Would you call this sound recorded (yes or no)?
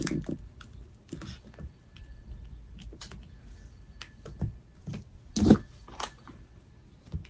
yes